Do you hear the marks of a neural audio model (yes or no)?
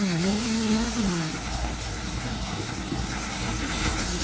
yes